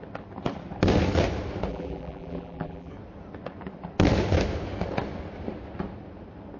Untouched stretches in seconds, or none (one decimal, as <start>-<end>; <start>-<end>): 0.0-1.7; 2.9-6.6